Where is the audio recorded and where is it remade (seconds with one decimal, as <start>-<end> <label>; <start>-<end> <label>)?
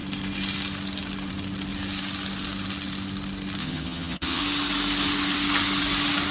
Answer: 0.0-3.6 recorded; 3.6-4.4 remade; 4.4-6.3 recorded